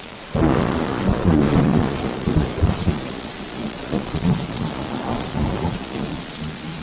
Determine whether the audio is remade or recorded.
remade